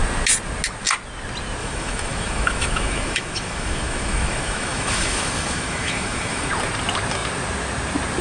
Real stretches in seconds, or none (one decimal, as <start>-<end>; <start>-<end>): 0.0-1.6; 6.5-8.2